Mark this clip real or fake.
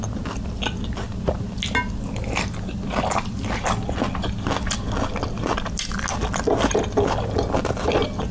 real